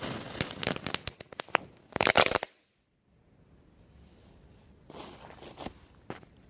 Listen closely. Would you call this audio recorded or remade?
recorded